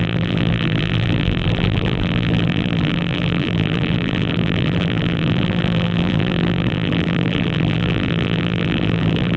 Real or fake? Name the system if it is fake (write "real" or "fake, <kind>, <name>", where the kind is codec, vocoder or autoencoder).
fake, vocoder, BigVGAN v2